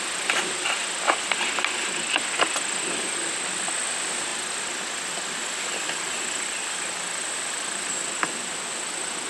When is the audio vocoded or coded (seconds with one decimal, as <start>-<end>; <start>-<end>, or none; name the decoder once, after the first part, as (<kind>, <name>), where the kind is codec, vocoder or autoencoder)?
none